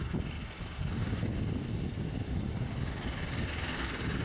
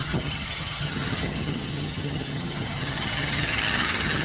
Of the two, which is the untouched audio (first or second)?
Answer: first